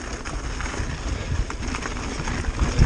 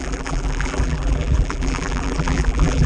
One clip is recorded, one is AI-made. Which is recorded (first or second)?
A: first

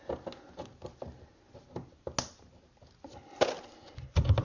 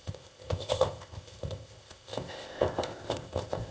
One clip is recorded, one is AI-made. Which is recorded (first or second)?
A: first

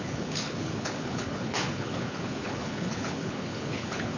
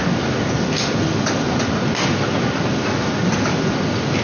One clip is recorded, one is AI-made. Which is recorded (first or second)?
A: second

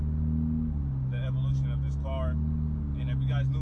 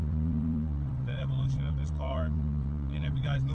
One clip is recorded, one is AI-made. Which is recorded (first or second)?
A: first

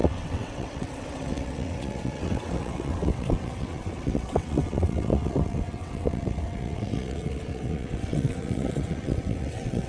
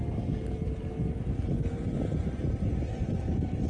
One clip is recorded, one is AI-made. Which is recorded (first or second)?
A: second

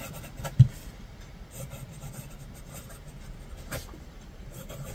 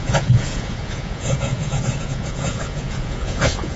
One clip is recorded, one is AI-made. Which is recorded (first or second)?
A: first